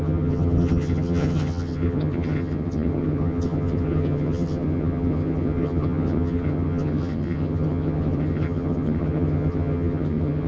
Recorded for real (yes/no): no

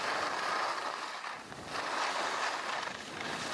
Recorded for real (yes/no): yes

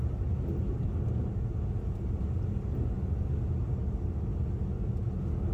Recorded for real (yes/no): yes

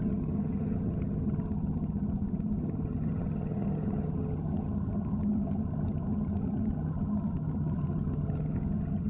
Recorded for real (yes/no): no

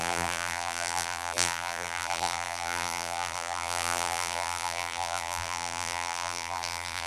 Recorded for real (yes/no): no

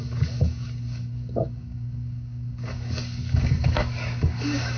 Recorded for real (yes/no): no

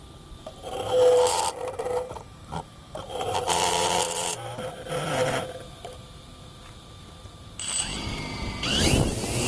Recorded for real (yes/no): no